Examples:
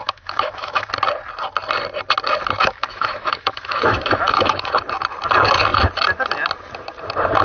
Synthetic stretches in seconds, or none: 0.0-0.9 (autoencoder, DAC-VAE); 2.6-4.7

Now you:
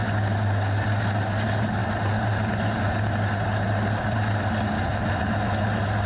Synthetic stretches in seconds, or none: none

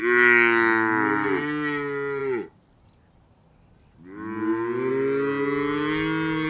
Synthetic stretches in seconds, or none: none

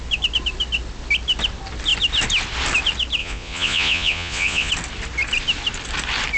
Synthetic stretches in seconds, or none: 3.2-4.7 (vocoder, Vocos)

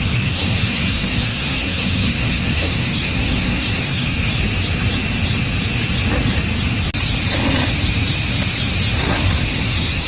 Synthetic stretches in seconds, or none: 0.0-4.3 (codec, SNAC); 9.0-10.1

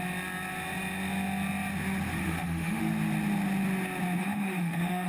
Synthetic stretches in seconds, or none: 2.2-2.8 (autoencoder, DAC-VAE); 4.2-5.1

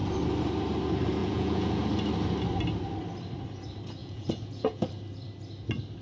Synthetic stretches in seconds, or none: 1.2-1.8 (vocoder, Vocos); 4.0-4.9